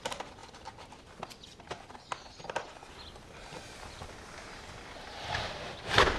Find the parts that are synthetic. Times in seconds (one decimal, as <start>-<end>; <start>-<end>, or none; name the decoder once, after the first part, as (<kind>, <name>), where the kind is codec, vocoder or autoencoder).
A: none